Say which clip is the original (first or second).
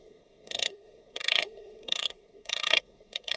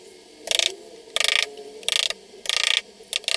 second